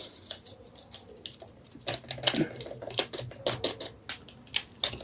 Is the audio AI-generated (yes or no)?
no